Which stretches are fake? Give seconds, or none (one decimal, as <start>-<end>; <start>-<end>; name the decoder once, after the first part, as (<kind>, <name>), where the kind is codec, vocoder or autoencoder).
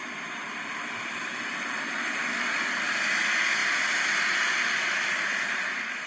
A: 0.0-6.1 (vocoder, BigVGAN v2)